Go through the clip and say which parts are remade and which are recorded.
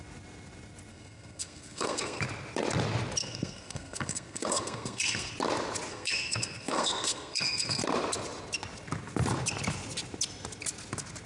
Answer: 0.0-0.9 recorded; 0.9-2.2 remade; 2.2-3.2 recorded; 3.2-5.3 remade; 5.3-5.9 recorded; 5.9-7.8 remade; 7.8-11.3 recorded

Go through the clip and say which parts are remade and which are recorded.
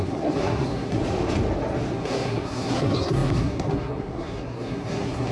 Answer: 0.0-1.0 remade; 1.0-2.0 recorded; 2.0-5.3 remade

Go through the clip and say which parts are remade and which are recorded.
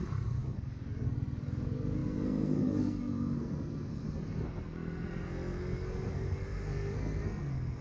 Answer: 0.0-7.8 remade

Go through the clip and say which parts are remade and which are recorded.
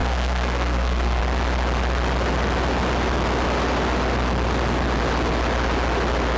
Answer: 0.0-1.2 remade; 1.2-6.4 recorded